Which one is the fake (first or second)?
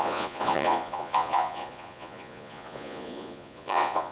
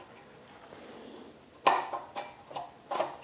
first